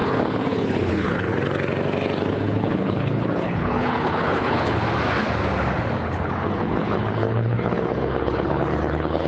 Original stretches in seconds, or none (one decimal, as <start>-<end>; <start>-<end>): 1.3-2.3; 4.8-6.0